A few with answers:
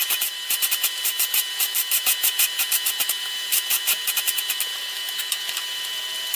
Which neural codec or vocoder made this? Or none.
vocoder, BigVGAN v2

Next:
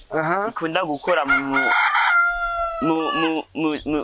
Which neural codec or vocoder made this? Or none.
none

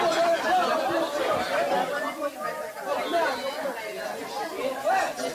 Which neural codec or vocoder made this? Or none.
none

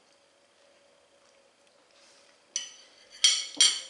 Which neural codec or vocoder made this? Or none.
none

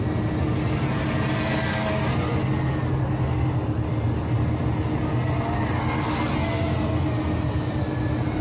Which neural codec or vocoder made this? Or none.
none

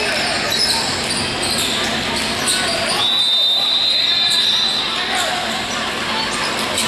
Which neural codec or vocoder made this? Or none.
none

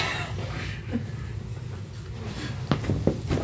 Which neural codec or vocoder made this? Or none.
none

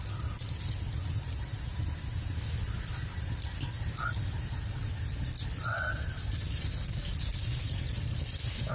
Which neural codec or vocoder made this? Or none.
none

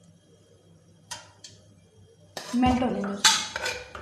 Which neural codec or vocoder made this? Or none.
vocoder, BigVGAN v2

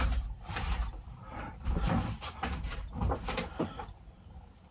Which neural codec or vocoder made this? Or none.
vocoder, BigVGAN v2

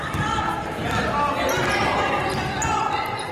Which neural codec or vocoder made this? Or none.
vocoder, BigVGAN v2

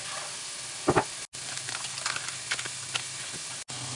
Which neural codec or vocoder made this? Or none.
none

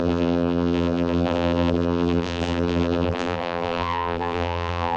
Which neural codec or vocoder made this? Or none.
vocoder, BigVGAN v2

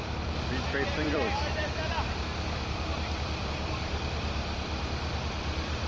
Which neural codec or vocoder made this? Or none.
vocoder, BigVGAN v2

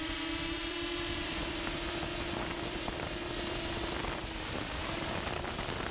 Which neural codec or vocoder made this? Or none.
vocoder, BigVGAN v2